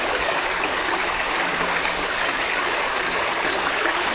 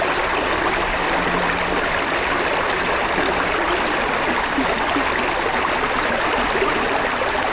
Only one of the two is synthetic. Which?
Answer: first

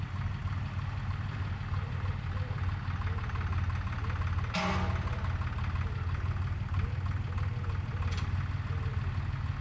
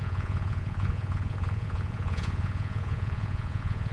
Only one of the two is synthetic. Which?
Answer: second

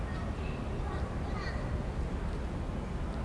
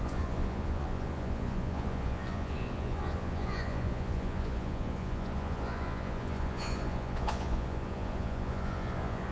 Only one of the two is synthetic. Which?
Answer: second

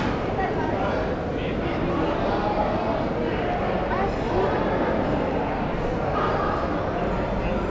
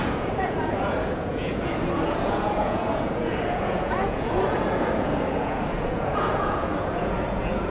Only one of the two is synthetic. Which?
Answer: second